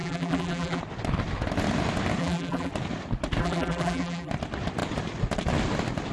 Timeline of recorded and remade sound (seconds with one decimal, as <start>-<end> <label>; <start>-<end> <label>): 0.0-0.8 remade; 0.8-2.2 recorded; 2.2-2.7 remade; 2.7-3.4 recorded; 3.4-4.3 remade; 4.3-6.1 recorded